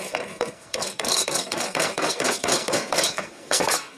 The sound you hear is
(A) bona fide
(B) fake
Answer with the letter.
B